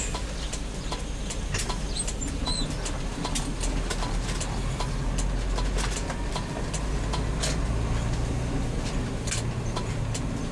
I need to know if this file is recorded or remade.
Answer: recorded